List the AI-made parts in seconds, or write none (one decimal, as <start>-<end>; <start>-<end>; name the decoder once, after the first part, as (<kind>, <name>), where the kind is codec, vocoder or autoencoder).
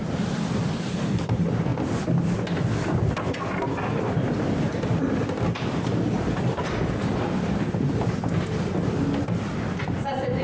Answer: 0.0-1.7 (vocoder, BigVGAN v2); 3.1-10.4